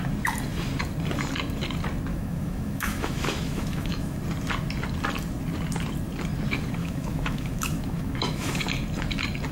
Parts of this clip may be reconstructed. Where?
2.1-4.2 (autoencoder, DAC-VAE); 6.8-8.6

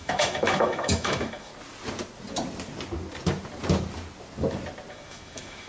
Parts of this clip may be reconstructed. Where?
0.0-1.5 (autoencoder, DAC-VAE); 4.9-5.7

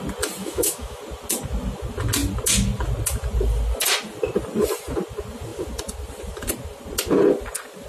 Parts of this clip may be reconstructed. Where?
0.4-1.0 (autoencoder, DAC-VAE)

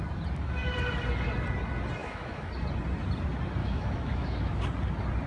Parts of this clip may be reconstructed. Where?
2.0-2.5 (autoencoder, DAC-VAE); 3.6-4.6

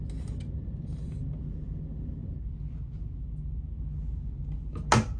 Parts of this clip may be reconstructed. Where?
none

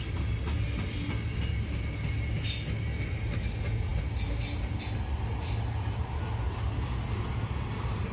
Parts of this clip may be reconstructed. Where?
none

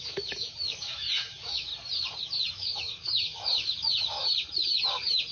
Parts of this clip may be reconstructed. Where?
0.0-1.7 (autoencoder, DAC-VAE); 2.5-4.2

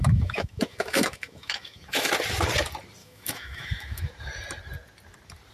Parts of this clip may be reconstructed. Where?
0.0-2.1 (autoencoder, DAC-VAE); 3.0-4.1